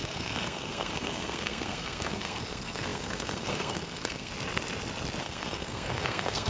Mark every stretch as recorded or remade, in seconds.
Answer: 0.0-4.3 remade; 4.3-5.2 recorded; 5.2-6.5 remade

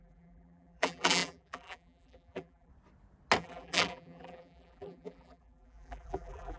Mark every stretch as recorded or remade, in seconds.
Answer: 0.0-2.7 remade; 2.7-3.4 recorded; 3.4-6.6 remade

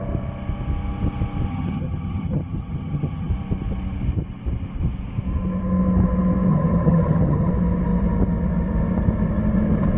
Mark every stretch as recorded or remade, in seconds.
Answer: 0.0-1.5 recorded; 1.5-3.3 remade; 3.3-6.5 recorded; 6.5-7.5 remade; 7.5-10.0 recorded

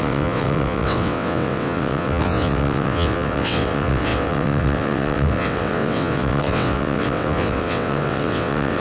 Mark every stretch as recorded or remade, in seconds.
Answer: 0.0-8.8 remade

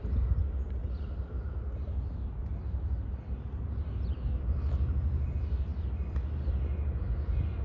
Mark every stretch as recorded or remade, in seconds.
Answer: 0.0-7.6 recorded

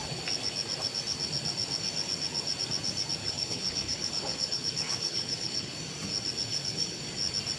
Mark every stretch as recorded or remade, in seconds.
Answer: 0.0-3.2 recorded; 3.2-5.8 remade; 5.8-6.5 recorded; 6.5-7.0 remade; 7.0-7.6 recorded

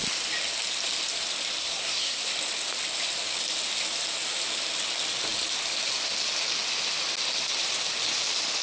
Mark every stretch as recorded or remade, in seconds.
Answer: 0.0-1.6 recorded; 1.6-2.3 remade; 2.3-8.6 recorded